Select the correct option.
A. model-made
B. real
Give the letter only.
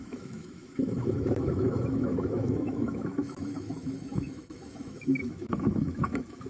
A